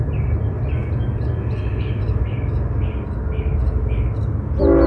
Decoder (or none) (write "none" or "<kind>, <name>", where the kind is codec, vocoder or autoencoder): none